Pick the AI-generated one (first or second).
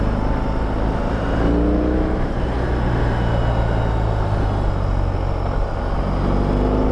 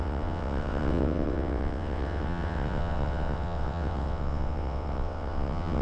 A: second